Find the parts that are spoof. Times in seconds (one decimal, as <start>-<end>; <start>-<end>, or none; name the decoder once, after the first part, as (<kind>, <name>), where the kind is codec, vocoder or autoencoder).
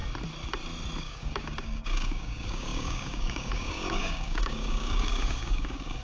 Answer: 1.0-6.0 (codec, DAC)